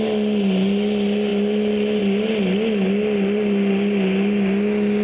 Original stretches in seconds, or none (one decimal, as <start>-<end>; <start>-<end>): 0.0-5.0